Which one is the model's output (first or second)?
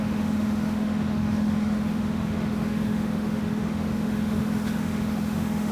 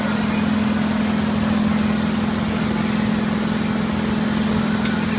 first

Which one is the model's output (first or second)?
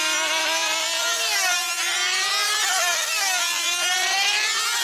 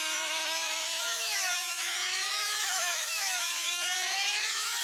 second